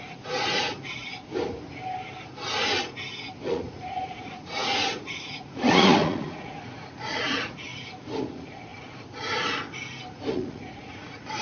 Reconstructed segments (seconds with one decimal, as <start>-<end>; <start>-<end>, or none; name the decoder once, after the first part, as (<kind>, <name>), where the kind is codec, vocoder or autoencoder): 0.0-1.1 (vocoder, Vocos); 3.4-7.7; 8.2-8.7; 10.3-11.4